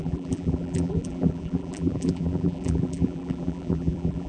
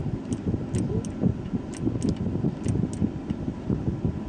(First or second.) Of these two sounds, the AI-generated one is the first